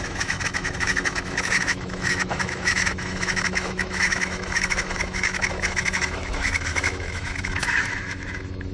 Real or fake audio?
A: fake